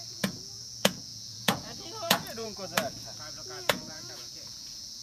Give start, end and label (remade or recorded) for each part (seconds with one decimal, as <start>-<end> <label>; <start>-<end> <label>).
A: 0.0-5.0 remade